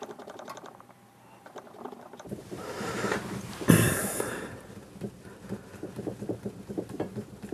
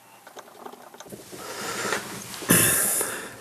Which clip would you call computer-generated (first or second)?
first